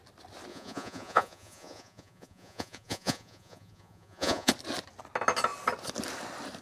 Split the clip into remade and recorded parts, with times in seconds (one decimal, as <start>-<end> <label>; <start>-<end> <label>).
0.0-0.5 recorded; 0.5-4.5 remade; 4.5-6.6 recorded